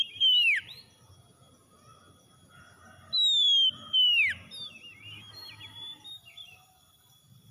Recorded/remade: recorded